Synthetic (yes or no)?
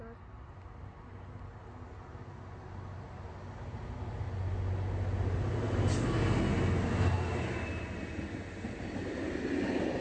no